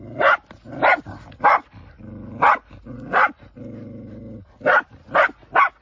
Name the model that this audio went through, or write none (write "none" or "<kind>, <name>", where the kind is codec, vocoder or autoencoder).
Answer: none